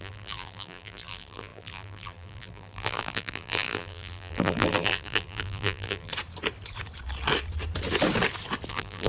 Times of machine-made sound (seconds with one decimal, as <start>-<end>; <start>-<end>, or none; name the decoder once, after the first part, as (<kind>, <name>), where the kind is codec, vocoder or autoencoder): 0.0-6.1 (vocoder, BigVGAN v2); 8.7-9.1